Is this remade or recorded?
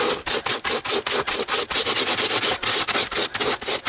recorded